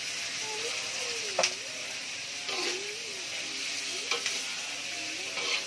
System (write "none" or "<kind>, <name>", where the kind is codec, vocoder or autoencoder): none